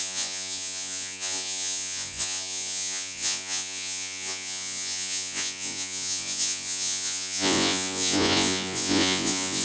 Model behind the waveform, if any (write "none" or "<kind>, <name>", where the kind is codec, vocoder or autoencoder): vocoder, Vocos